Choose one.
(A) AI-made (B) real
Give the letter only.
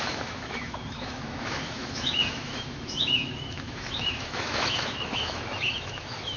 A